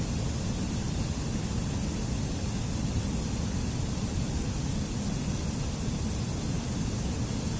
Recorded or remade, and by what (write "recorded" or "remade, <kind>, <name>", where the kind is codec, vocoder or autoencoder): recorded